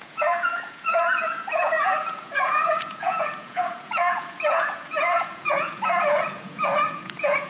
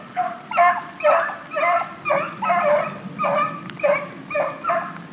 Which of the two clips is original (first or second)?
second